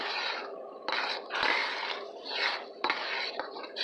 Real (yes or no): yes